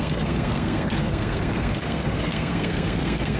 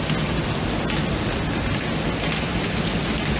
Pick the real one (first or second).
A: second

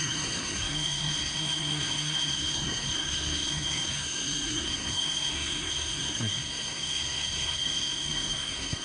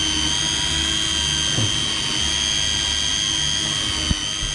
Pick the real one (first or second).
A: second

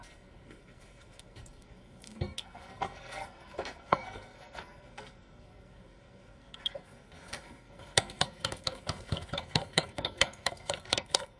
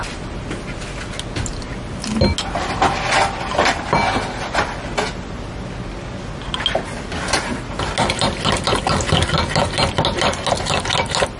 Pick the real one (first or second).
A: second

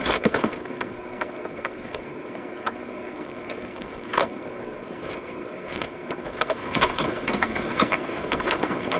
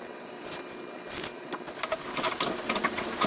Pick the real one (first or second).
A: second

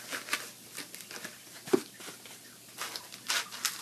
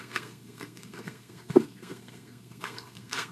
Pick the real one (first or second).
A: first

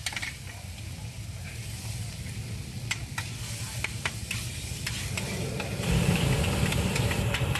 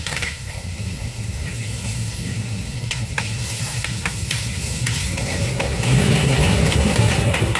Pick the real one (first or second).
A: first